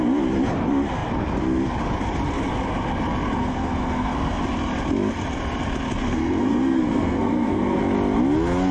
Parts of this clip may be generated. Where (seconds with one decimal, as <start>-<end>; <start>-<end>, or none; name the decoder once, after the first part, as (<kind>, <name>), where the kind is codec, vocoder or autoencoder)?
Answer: 3.4-4.4 (codec, SNAC); 6.0-7.8